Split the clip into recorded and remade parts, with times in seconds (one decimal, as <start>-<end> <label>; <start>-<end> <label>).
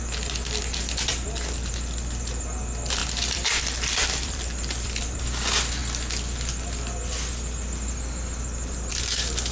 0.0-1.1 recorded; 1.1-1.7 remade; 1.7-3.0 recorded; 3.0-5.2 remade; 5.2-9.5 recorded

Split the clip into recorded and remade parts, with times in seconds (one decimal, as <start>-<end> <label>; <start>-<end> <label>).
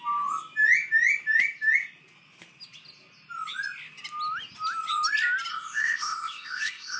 0.0-5.5 recorded; 5.5-7.0 remade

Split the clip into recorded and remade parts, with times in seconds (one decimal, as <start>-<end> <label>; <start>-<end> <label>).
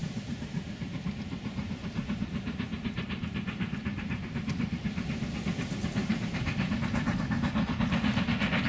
0.0-4.5 remade; 4.5-6.0 recorded; 6.0-6.8 remade; 6.8-8.7 recorded